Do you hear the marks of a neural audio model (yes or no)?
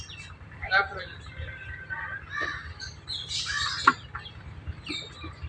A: no